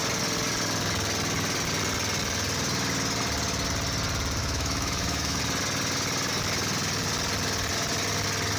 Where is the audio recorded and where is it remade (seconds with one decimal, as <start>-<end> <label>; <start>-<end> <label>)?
0.0-4.4 recorded; 4.4-5.4 remade; 5.4-8.6 recorded